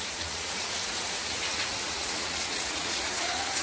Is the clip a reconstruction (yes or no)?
yes